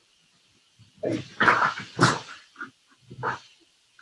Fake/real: real